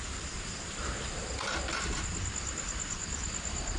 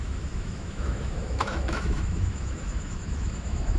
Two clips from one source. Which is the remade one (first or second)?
second